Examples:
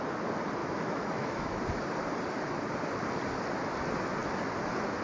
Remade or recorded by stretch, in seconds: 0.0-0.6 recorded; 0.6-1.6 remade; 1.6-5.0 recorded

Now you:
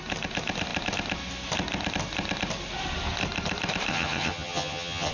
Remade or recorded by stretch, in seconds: 0.0-3.9 recorded; 3.9-5.1 remade

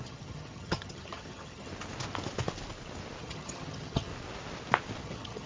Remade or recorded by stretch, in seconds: 0.0-1.7 remade; 1.7-3.2 recorded; 3.2-4.1 remade; 4.1-5.0 recorded; 5.0-5.5 remade